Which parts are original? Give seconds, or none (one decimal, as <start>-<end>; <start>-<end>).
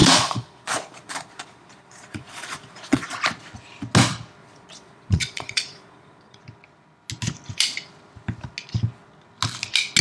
3.1-4.4; 6.4-10.0